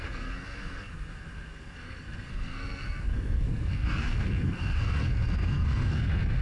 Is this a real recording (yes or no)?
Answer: no